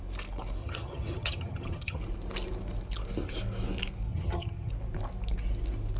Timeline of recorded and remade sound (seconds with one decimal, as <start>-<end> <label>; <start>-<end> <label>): 0.0-0.6 recorded; 0.6-2.0 remade; 2.0-4.1 recorded; 4.1-4.7 remade; 4.7-6.0 recorded